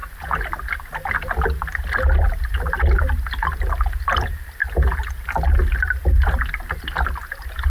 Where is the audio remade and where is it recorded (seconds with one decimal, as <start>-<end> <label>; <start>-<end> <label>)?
0.0-7.7 recorded